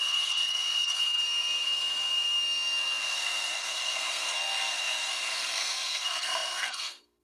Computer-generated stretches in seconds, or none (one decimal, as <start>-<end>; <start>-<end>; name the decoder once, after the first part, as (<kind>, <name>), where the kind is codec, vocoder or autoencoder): 0.0-7.2 (codec, SNAC)